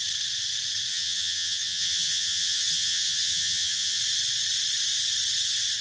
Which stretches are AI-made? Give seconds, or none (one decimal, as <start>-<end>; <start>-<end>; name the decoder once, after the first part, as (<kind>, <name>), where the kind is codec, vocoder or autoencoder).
0.9-4.0 (vocoder, HiFi-GAN)